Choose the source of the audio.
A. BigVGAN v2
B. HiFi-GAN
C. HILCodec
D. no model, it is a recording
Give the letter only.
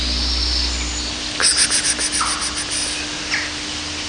D